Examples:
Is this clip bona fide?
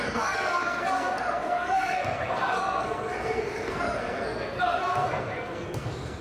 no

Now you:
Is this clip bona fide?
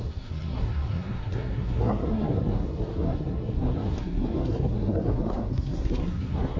no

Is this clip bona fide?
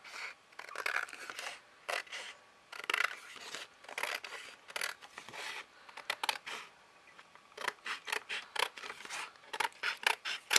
yes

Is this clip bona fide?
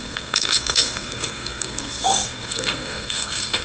no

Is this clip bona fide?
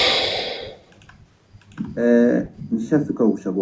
yes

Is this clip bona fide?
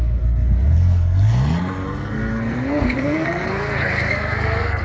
no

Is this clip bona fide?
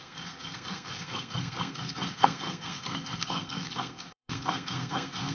no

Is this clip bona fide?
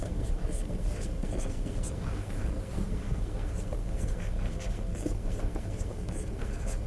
no